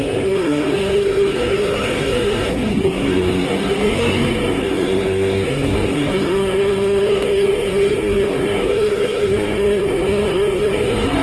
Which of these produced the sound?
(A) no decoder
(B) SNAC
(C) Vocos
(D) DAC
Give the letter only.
B